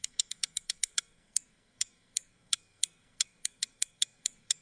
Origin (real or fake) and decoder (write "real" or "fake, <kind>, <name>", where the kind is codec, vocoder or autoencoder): fake, codec, SNAC